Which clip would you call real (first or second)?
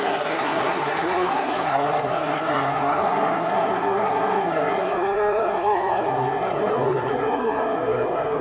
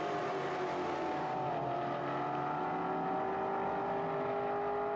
second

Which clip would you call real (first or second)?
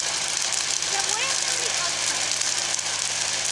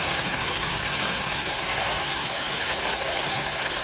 first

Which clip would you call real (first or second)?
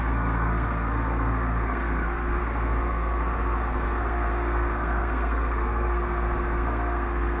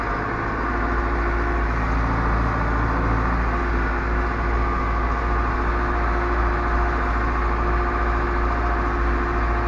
second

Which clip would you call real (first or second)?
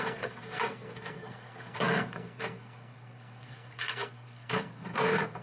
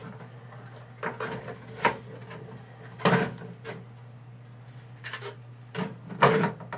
second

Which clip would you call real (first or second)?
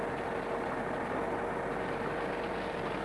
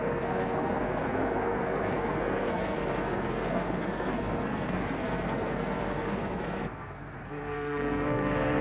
first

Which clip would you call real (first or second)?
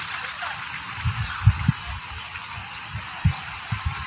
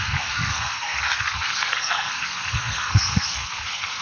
first